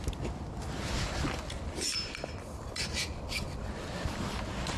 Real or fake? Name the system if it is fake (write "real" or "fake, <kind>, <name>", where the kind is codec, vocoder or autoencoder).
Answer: real